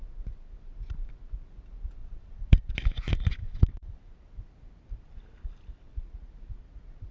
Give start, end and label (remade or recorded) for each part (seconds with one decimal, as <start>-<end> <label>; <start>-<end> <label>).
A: 0.0-2.0 recorded; 2.0-2.7 remade; 2.7-3.4 recorded; 3.4-4.1 remade; 4.1-7.1 recorded